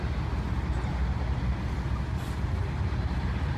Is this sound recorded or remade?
recorded